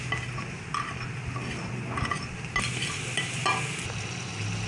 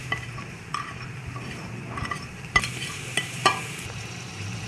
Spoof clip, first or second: second